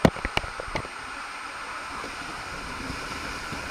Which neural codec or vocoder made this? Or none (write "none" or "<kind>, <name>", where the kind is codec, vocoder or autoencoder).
none